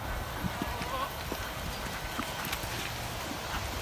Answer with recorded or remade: recorded